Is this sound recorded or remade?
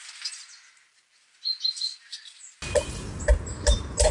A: recorded